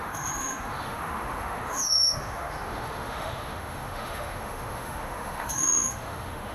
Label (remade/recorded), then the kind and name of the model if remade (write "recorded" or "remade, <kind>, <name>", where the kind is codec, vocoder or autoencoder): remade, autoencoder, DAC-VAE